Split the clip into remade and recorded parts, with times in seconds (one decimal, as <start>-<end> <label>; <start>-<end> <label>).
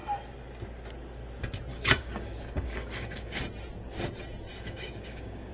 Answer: 0.0-1.7 recorded; 1.7-3.4 remade; 3.4-4.5 recorded; 4.5-5.5 remade